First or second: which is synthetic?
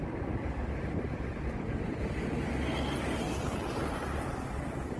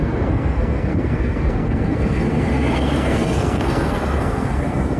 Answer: second